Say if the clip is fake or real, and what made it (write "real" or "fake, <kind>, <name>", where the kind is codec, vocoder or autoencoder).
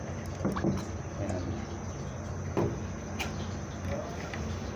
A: real